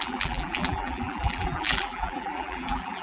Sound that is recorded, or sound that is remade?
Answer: remade